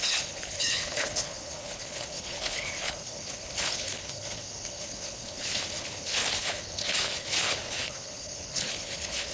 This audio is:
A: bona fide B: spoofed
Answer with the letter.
B